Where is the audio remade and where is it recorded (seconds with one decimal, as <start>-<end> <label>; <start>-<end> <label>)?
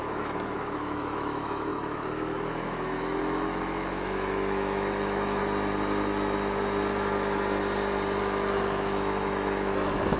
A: 0.0-5.4 remade; 5.4-8.2 recorded; 8.2-10.2 remade